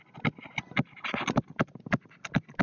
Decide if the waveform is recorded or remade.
remade